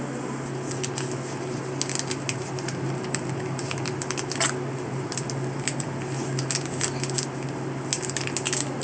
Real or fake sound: real